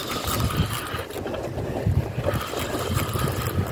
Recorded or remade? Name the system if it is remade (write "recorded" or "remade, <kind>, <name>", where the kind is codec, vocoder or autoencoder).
recorded